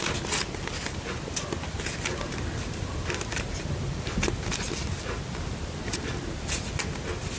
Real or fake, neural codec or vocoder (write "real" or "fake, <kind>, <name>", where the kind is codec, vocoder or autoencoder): real